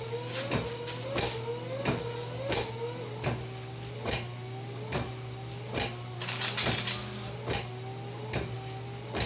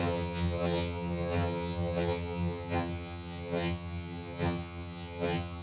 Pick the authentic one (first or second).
first